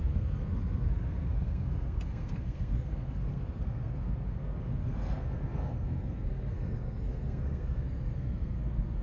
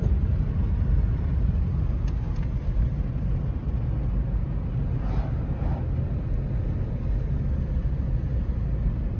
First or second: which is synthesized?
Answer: first